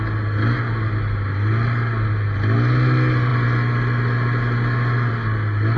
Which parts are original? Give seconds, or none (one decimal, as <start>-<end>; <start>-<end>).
0.0-5.8